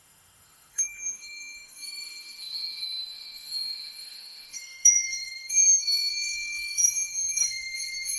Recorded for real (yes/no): no